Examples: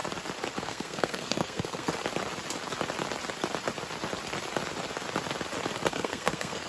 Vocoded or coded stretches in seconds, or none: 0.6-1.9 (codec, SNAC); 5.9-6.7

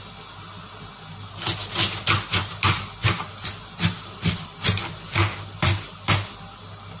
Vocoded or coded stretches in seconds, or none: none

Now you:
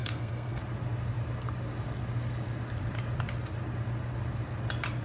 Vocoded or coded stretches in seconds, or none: 0.0-0.6 (codec, SNAC)

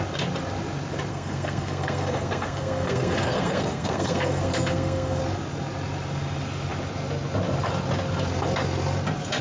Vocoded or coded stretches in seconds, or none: 1.1-5.2 (codec, SNAC)

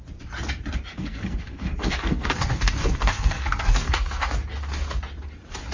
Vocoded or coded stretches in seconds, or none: 0.9-4.3 (codec, SNAC)